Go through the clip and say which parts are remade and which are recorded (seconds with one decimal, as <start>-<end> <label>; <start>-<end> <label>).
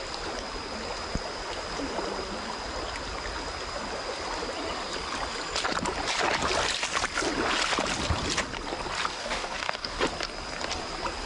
0.0-9.1 recorded; 9.1-10.0 remade; 10.0-11.3 recorded